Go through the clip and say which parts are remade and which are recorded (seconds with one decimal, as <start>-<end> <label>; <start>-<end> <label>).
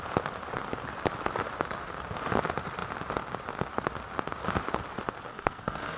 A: 0.0-5.3 recorded; 5.3-6.0 remade